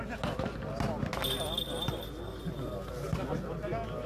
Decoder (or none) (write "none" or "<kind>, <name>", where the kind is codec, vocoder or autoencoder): none